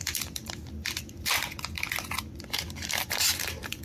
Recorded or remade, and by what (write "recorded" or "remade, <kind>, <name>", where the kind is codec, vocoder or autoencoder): remade, vocoder, BigVGAN v2